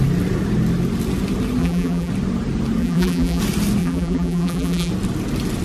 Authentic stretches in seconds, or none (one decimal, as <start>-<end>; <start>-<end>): 0.0-1.6; 2.1-2.8; 3.4-3.8; 4.9-5.6